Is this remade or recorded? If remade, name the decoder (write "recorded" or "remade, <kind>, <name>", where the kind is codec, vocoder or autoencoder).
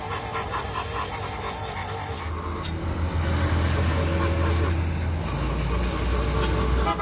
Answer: recorded